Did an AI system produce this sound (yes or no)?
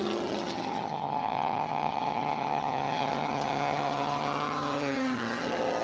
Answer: yes